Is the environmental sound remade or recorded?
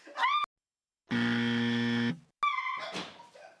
recorded